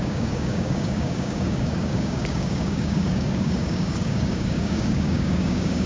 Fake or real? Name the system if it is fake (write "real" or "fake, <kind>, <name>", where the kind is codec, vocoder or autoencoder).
fake, codec, DAC